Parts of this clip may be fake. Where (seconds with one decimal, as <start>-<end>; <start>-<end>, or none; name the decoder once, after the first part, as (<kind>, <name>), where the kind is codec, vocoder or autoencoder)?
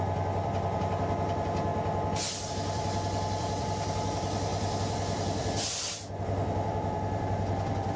0.0-1.7 (vocoder, BigVGAN v2); 2.5-8.0